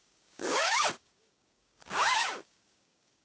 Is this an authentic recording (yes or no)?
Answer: no